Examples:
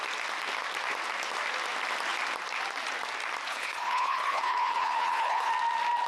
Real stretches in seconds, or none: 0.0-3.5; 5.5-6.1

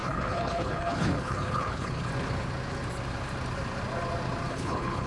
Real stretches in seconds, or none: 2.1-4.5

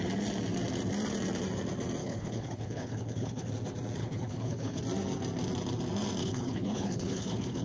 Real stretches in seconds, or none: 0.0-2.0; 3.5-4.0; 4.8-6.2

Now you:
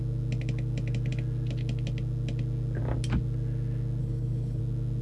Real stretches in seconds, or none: 0.0-4.0; 4.6-5.0

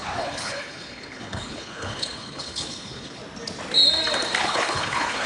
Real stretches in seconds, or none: 3.2-4.4